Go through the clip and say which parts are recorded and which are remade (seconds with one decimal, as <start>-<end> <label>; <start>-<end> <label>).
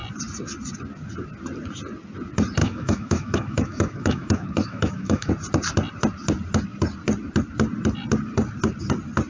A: 0.0-2.6 recorded; 2.6-5.3 remade; 5.3-9.3 recorded